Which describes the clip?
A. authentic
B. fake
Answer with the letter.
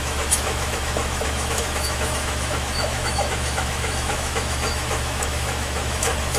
B